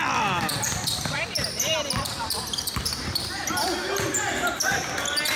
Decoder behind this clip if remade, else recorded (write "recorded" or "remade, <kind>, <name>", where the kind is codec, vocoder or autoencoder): remade, vocoder, BigVGAN v2